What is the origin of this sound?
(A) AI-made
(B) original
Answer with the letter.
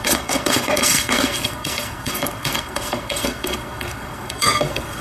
A